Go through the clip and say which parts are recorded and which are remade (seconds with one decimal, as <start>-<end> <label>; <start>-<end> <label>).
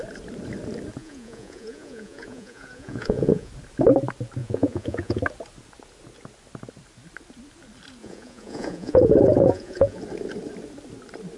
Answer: 0.0-1.0 recorded; 1.0-3.5 remade; 3.5-4.4 recorded; 4.4-5.2 remade; 5.2-8.0 recorded; 8.0-10.0 remade; 10.0-11.4 recorded